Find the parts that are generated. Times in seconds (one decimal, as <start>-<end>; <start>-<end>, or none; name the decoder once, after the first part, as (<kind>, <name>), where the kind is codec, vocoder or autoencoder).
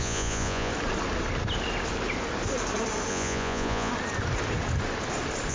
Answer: 0.0-0.7 (vocoder, Vocos); 3.1-3.9